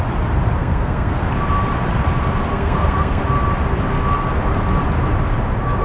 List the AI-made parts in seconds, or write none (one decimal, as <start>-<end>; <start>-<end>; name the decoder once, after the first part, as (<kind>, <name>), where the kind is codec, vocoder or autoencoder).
0.6-1.2 (codec, SNAC); 2.5-3.2